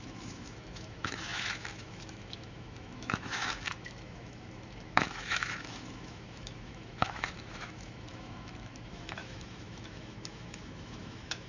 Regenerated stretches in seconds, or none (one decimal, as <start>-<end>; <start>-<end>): 0.0-11.5